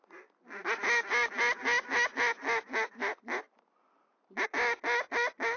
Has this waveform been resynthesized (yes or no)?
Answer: no